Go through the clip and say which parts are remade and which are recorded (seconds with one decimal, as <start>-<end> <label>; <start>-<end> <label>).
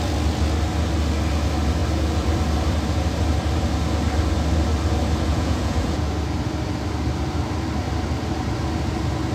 0.0-5.3 recorded; 5.3-6.1 remade; 6.1-9.3 recorded